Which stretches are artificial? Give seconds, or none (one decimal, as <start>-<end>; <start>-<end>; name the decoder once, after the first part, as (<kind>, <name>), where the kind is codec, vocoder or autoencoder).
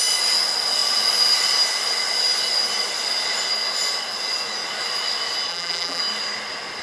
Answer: 5.5-6.0 (vocoder, BigVGAN v2)